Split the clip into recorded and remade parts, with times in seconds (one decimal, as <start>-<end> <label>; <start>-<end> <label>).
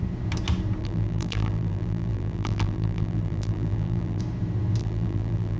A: 0.0-0.8 recorded; 0.8-4.2 remade; 4.2-4.8 recorded; 4.8-5.6 remade